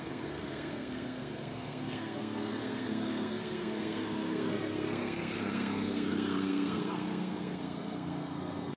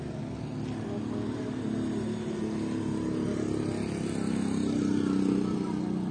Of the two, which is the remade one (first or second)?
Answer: first